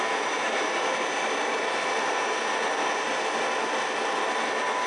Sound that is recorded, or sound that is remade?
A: recorded